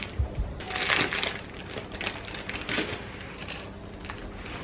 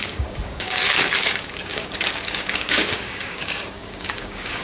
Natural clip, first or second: first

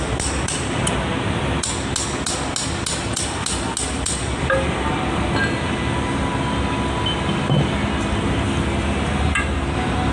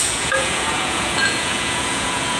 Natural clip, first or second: first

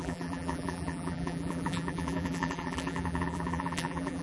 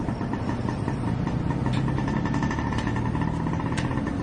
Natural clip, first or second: second